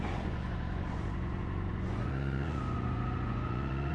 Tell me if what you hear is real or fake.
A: fake